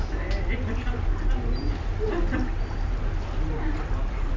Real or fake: real